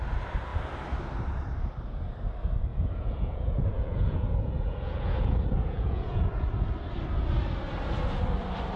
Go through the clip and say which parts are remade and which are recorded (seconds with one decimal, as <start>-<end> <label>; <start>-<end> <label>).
0.0-2.7 recorded; 2.7-6.5 remade; 6.5-8.8 recorded